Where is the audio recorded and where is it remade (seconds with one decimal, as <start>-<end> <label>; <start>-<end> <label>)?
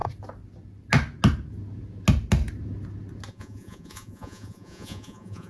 0.0-3.3 recorded; 3.3-5.5 remade